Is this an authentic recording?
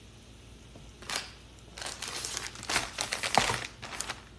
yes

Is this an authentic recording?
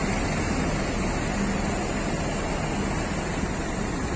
yes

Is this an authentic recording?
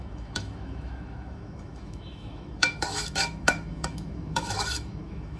no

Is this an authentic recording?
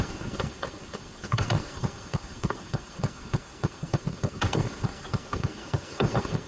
no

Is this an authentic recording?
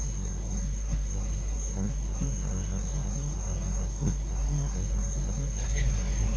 no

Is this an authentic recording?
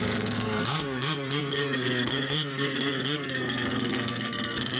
no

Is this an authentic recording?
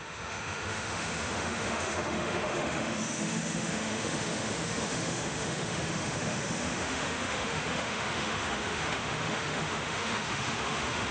no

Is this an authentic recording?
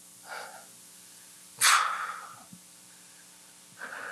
yes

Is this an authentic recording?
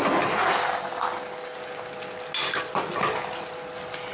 yes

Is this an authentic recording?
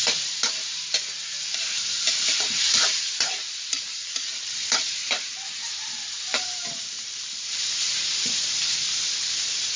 no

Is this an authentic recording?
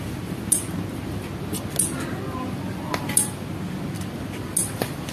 yes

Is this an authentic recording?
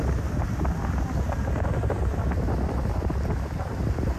yes